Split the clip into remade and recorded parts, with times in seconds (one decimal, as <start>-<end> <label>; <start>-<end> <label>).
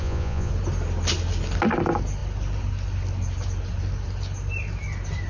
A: 0.0-0.5 remade; 0.5-5.3 recorded